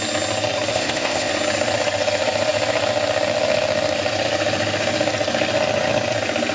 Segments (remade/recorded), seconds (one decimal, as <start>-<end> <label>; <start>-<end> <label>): 0.0-0.7 recorded; 0.7-1.3 remade; 1.3-6.5 recorded